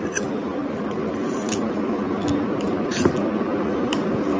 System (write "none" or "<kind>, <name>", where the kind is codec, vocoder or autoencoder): none